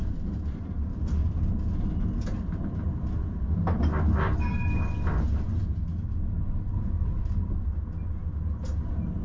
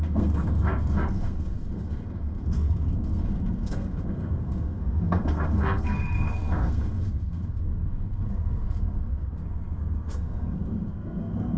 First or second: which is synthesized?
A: second